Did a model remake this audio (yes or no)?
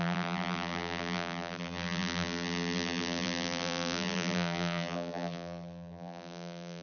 yes